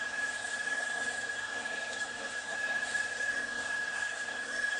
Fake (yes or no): yes